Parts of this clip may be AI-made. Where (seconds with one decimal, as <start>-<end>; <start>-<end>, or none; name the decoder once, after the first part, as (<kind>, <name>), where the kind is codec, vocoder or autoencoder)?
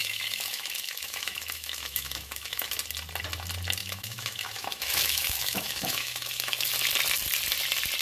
0.0-2.7 (autoencoder, DAC-VAE); 3.8-6.7